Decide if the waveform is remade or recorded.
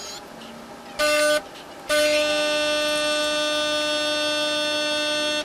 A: recorded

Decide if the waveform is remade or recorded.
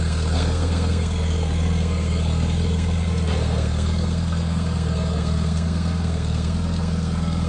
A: remade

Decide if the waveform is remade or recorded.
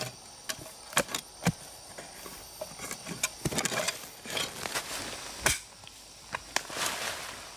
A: recorded